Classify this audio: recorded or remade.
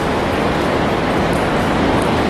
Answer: recorded